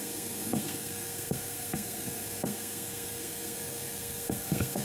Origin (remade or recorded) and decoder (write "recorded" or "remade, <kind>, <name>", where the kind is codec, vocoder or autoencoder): remade, codec, SNAC